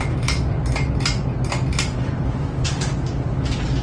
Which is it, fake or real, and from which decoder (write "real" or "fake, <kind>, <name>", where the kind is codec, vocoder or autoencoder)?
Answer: real